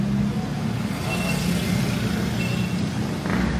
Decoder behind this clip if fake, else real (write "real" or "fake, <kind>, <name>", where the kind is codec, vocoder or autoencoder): real